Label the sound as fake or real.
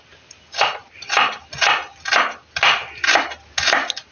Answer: real